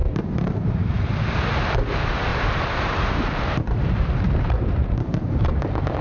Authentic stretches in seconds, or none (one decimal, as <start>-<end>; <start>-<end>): 0.9-2.3